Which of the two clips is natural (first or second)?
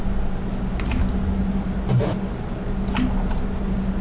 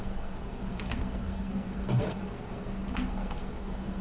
first